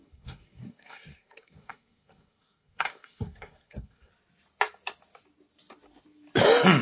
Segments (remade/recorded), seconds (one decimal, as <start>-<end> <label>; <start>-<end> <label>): 0.0-4.1 remade; 4.1-6.8 recorded